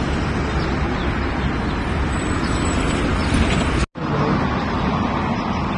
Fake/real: real